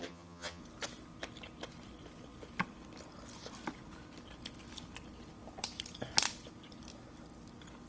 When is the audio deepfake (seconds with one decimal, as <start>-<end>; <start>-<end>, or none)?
0.0-0.6

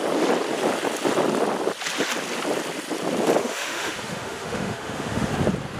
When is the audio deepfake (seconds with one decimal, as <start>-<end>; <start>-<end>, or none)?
3.4-5.3